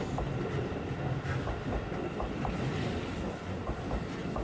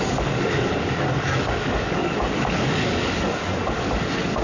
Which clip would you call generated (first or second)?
second